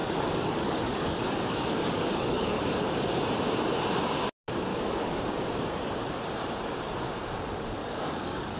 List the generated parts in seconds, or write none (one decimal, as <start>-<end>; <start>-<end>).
0.0-3.2; 4.7-5.2; 7.8-8.6